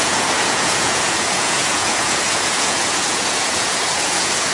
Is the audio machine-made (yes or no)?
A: yes